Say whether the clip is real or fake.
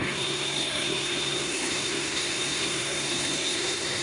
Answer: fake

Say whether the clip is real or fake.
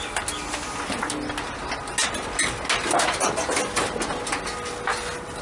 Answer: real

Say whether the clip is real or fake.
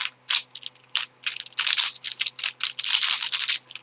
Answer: real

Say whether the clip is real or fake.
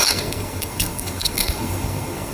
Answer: fake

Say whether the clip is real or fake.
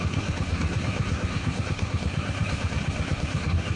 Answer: fake